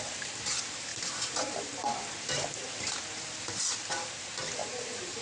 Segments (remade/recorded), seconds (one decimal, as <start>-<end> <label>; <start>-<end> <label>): 0.0-0.9 recorded; 0.9-1.6 remade; 1.6-4.6 recorded; 4.6-5.2 remade